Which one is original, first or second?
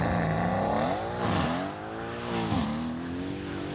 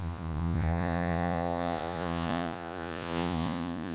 first